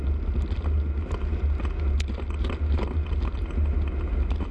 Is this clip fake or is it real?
real